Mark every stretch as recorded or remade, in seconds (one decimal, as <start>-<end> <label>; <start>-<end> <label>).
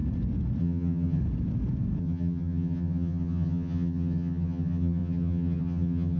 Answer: 0.0-0.6 recorded; 0.6-1.2 remade; 1.2-2.0 recorded; 2.0-6.2 remade